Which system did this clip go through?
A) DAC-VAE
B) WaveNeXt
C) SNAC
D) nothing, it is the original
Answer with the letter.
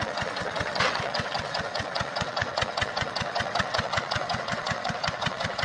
B